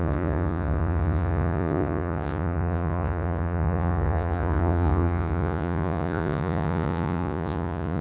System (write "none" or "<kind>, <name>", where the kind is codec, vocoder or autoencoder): vocoder, Vocos